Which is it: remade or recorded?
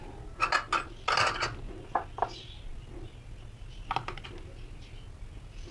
recorded